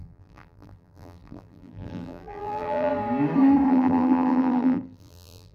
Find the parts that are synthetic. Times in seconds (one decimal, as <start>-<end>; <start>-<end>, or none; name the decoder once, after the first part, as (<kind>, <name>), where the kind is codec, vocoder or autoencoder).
0.0-2.9 (vocoder, BigVGAN v2); 3.7-5.5